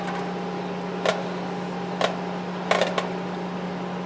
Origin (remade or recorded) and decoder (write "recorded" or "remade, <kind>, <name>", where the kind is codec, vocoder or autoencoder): recorded